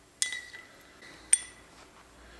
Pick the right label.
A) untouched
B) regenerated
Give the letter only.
A